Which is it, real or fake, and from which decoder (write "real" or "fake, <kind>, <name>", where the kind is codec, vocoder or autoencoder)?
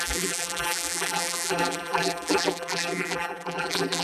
fake, vocoder, BigVGAN v2